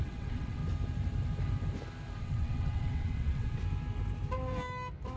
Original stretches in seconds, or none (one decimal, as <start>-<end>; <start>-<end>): 0.6-2.2; 3.6-5.2